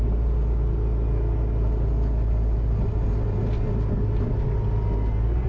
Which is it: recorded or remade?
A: recorded